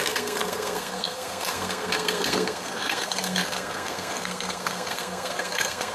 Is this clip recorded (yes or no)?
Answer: no